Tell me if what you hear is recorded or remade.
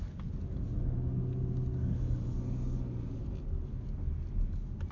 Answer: recorded